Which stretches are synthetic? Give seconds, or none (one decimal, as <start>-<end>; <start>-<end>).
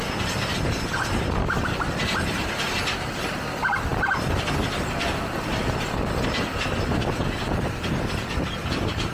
none